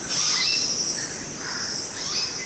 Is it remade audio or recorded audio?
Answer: recorded